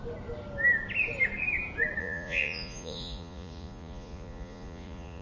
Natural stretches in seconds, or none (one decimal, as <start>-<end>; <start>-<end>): 0.0-2.0